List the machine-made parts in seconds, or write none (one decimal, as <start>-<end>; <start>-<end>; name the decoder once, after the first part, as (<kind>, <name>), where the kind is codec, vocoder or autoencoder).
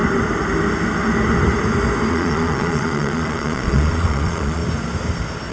2.1-4.6 (vocoder, Vocos)